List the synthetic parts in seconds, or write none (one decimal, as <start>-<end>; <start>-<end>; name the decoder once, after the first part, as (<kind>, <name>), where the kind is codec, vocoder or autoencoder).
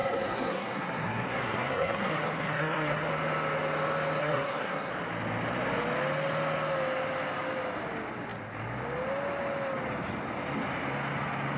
0.0-3.1 (codec, SNAC); 4.2-4.9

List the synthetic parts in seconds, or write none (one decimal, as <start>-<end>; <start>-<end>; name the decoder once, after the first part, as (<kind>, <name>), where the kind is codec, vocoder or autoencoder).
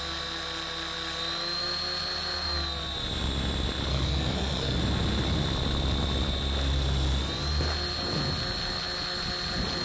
3.9-4.8 (codec, SNAC)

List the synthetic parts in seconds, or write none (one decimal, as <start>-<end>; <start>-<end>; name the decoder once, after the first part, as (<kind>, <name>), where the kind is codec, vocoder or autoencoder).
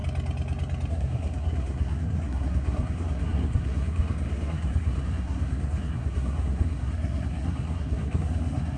0.9-8.8 (codec, SNAC)